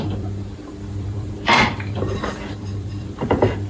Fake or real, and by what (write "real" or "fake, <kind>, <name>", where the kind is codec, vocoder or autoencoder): fake, vocoder, BigVGAN v2